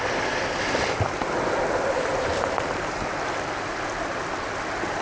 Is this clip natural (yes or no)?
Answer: yes